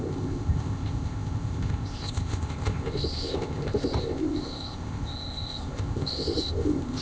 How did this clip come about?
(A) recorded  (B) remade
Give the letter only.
B